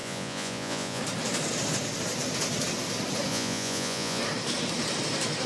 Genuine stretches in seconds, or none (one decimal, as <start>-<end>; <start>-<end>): 1.0-3.3; 4.2-5.5